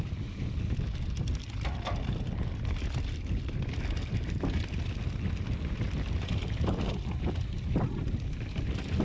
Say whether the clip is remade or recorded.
recorded